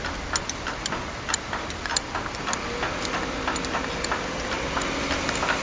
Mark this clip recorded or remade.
recorded